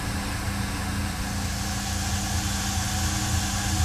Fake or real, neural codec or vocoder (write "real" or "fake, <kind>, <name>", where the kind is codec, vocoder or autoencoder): real